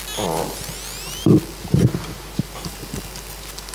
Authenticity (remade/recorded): recorded